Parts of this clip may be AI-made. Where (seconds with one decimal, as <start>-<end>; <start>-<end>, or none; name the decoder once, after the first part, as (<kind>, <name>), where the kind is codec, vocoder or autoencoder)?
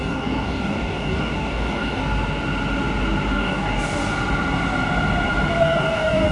0.0-2.0 (codec, DAC); 3.3-4.0; 5.6-6.3